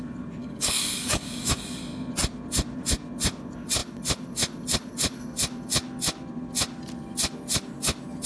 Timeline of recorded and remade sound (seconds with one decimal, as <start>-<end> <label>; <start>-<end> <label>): 0.0-0.4 recorded; 0.4-1.8 remade; 1.8-8.3 recorded